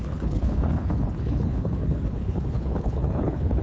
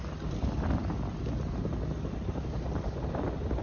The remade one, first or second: first